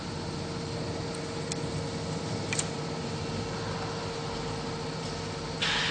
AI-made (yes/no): no